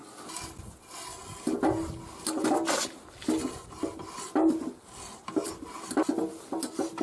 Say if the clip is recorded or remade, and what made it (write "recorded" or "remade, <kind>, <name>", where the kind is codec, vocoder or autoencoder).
recorded